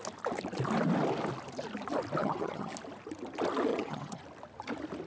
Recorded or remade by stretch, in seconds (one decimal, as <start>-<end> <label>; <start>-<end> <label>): 0.0-2.2 recorded; 2.2-2.7 remade; 2.7-3.7 recorded; 3.7-4.2 remade; 4.2-5.1 recorded